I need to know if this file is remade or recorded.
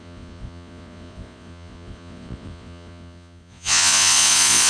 remade